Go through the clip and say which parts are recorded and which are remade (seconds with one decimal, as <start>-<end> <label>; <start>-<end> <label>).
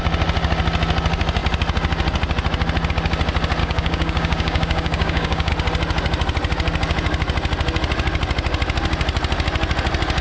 0.0-3.6 recorded; 3.6-5.5 remade; 5.5-10.2 recorded